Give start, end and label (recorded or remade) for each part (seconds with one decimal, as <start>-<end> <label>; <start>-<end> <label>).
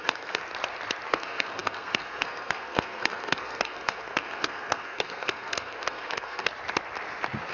0.0-0.4 remade; 0.4-1.1 recorded; 1.1-6.5 remade; 6.5-7.5 recorded